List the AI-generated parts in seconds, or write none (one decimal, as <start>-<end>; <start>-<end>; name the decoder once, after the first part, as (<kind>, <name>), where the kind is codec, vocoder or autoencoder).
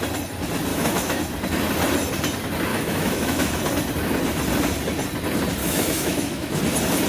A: 0.7-1.2 (autoencoder, DAC-VAE); 2.7-3.5; 5.6-6.6